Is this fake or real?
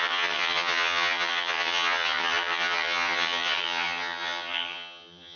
fake